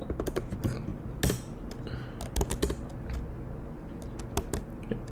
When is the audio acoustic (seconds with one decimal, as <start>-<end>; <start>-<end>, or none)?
0.0-5.1